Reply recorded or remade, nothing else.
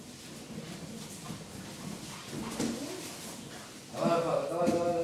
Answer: recorded